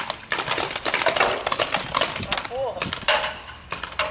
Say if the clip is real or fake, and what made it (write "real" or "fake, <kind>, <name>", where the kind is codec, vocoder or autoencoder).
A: fake, vocoder, BigVGAN v2